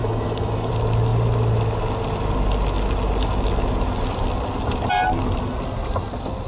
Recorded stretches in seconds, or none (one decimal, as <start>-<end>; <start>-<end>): 0.7-6.5